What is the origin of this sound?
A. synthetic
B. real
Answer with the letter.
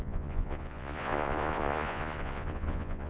A